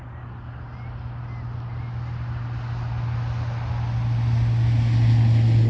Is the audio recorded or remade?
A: recorded